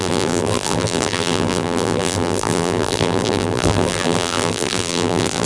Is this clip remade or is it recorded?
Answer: remade